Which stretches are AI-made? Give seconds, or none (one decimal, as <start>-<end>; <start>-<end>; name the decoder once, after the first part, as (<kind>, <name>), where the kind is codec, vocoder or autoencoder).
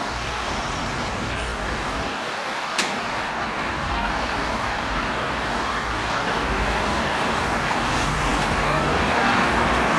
0.0-0.5 (codec, DAC); 1.1-10.0